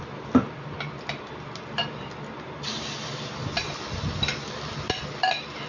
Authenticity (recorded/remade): recorded